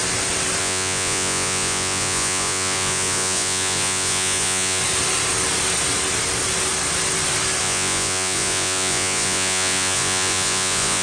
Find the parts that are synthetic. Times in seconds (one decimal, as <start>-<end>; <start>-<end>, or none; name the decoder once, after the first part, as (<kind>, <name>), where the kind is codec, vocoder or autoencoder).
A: 0.6-4.8 (vocoder, Vocos); 7.6-11.0